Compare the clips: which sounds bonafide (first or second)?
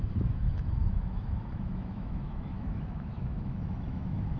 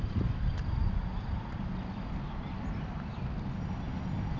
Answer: second